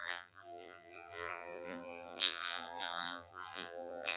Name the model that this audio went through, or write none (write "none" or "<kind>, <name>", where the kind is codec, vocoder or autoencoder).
vocoder, BigVGAN v2